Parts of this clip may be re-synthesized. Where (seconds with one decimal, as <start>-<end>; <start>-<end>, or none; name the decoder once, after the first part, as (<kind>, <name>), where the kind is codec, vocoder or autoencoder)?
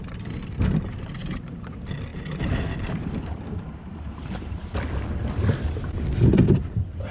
1.2-1.7 (vocoder, BigVGAN v2); 2.1-4.8